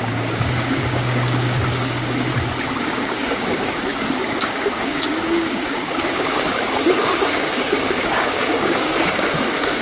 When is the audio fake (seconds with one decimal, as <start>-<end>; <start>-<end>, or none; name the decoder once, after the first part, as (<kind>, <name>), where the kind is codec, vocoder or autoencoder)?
0.0-2.3 (codec, DAC); 2.8-9.8